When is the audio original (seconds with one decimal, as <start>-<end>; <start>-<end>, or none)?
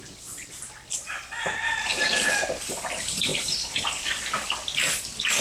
0.0-5.4